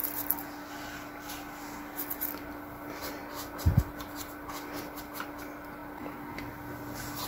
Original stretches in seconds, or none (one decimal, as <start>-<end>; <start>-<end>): 0.0-7.3